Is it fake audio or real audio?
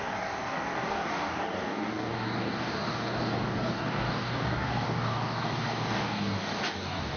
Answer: fake